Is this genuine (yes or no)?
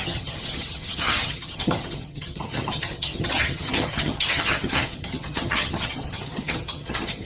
no